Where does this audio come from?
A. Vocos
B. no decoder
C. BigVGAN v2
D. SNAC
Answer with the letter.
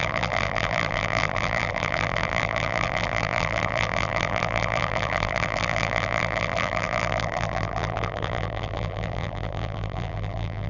C